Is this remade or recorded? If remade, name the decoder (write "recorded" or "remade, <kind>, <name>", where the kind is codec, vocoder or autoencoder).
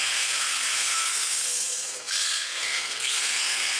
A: remade, codec, SNAC